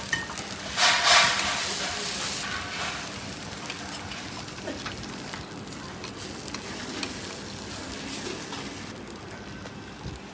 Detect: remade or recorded recorded